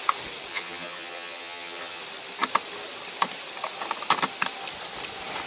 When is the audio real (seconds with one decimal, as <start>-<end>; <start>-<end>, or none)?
0.0-0.5; 2.0-5.5